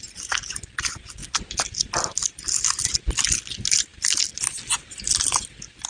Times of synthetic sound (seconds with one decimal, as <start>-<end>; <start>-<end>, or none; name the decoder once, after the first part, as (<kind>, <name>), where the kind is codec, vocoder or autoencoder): none